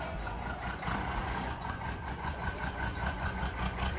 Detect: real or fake fake